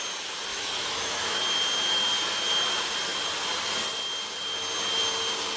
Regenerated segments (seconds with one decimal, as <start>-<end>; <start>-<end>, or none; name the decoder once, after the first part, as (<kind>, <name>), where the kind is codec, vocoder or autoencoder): 0.5-1.4 (autoencoder, DAC-VAE)